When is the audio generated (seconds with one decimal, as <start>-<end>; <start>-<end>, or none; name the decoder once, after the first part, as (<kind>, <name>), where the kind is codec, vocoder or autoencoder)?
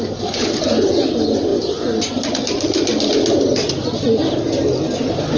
none